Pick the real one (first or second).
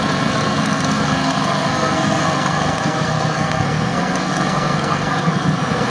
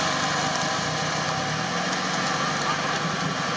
second